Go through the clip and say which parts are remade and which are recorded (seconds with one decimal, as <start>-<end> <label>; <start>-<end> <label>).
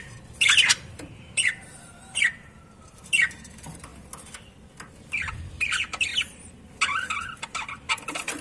0.0-3.9 remade; 3.9-5.1 recorded; 5.1-6.1 remade; 6.1-7.1 recorded; 7.1-8.4 remade